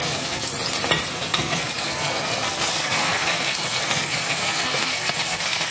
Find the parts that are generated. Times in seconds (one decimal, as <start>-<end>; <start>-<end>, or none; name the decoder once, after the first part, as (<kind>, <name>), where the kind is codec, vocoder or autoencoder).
0.0-0.5 (codec, SNAC); 1.1-5.7

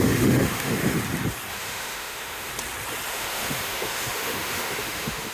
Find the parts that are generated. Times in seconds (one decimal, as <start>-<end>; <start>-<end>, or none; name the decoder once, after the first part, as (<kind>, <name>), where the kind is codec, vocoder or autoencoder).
0.0-0.9 (autoencoder, DAC-VAE); 1.5-2.5; 3.1-5.3

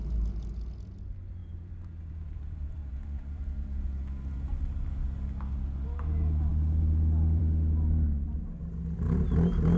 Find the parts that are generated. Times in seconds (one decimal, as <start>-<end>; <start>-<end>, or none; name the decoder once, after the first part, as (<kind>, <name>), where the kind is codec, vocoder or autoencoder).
1.4-3.4 (vocoder, BigVGAN v2)

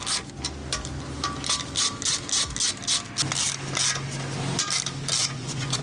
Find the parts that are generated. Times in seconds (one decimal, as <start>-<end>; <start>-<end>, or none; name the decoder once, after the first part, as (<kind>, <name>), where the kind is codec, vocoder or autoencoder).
5.2-5.8 (vocoder, Vocos)

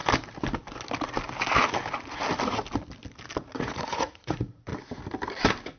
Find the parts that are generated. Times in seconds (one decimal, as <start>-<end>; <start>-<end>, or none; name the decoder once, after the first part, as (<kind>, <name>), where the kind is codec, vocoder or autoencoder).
3.5-4.7 (vocoder, Vocos)

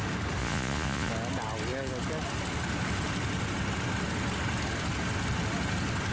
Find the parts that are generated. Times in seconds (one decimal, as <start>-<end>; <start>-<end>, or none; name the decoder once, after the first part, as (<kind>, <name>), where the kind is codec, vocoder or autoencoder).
0.4-1.1 (vocoder, Vocos)